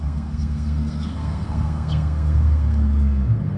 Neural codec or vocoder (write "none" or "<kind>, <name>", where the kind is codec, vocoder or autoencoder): codec, SNAC